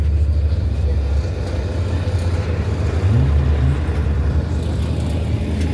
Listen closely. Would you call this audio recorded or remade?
recorded